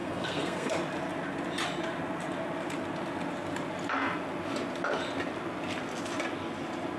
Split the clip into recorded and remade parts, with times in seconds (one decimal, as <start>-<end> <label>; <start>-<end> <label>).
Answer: 0.0-0.7 remade; 0.7-7.0 recorded